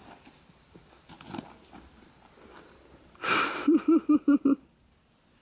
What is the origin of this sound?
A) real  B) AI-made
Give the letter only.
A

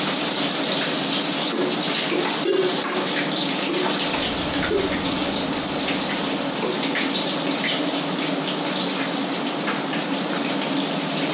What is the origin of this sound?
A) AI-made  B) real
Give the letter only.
B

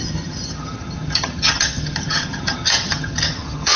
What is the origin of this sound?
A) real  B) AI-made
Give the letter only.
B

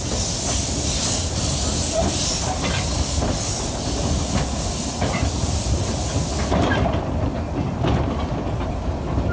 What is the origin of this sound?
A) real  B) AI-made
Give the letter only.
A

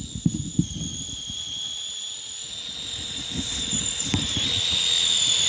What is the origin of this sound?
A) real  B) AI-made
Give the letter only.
A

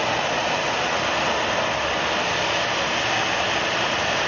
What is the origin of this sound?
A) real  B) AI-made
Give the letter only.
A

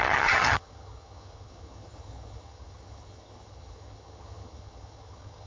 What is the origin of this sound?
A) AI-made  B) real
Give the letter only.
A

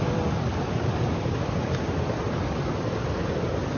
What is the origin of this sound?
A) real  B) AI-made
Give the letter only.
A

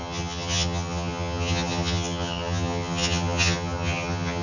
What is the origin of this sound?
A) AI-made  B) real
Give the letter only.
A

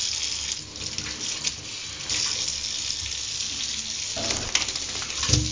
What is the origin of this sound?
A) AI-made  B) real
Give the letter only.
B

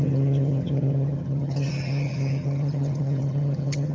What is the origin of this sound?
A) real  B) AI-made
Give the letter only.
B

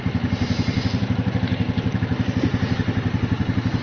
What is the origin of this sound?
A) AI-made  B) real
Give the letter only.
B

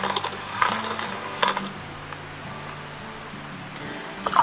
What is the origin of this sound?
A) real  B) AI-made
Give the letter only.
A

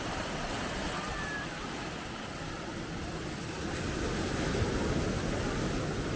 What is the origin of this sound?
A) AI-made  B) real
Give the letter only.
B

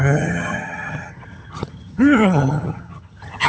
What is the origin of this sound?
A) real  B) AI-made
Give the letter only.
B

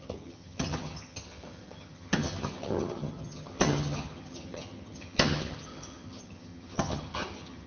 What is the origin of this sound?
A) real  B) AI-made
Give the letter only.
B